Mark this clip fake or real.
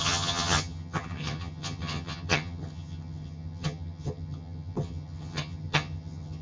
fake